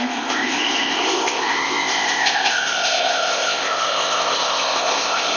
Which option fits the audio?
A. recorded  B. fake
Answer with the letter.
B